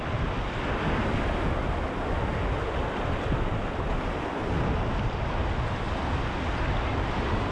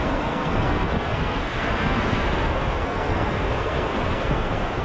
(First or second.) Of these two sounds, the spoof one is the second